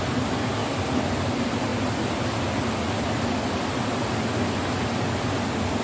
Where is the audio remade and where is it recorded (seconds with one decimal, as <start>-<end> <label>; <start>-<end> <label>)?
0.0-5.8 recorded